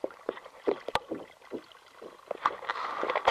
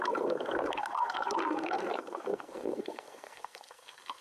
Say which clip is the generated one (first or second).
second